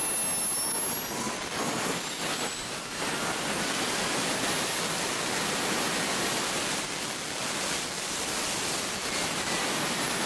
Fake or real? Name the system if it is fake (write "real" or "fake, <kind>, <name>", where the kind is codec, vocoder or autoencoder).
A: real